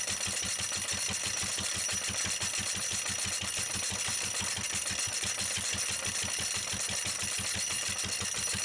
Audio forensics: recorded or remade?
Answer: remade